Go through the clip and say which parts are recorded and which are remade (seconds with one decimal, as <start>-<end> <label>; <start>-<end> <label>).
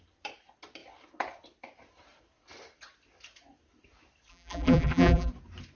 0.0-4.3 recorded; 4.3-5.3 remade; 5.3-5.8 recorded